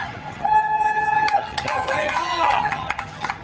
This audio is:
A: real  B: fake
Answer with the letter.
B